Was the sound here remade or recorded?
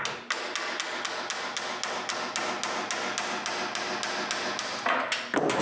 recorded